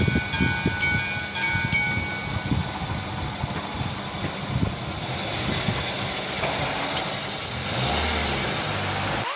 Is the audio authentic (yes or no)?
yes